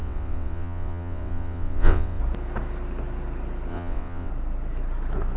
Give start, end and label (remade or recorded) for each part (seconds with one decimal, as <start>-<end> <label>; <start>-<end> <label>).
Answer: 0.0-2.2 remade; 2.2-3.7 recorded; 3.7-4.3 remade; 4.3-5.4 recorded